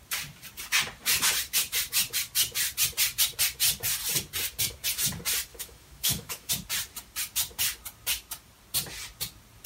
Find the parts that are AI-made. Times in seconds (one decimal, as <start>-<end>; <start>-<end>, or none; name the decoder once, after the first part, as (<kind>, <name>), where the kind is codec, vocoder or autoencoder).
5.5-6.5 (autoencoder, DAC-VAE)